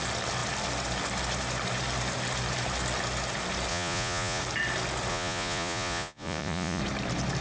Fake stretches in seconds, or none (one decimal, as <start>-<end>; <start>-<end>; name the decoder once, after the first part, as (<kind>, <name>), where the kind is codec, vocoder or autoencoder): 3.7-4.4 (vocoder, Vocos); 5.1-6.8